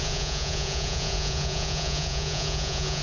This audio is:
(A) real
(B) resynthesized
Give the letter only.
B